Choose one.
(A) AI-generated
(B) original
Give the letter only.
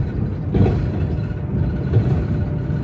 B